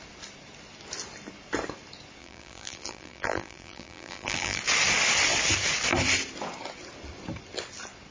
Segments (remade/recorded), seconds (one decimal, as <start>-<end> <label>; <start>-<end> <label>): 0.0-2.2 recorded; 2.2-4.6 remade; 4.6-8.1 recorded